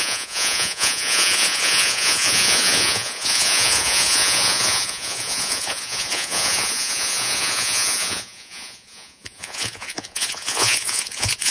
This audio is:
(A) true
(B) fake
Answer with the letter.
B